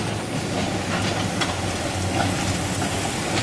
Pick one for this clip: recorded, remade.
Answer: recorded